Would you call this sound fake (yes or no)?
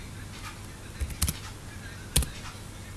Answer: no